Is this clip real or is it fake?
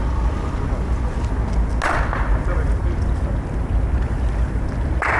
real